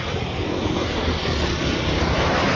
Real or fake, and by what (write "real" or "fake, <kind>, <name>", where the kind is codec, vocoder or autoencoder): real